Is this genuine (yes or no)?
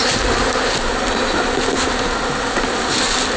yes